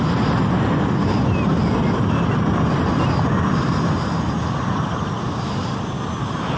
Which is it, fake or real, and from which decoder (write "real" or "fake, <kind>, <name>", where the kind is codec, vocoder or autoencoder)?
real